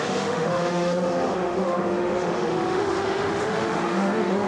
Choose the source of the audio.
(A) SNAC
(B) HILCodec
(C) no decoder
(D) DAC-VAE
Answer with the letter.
D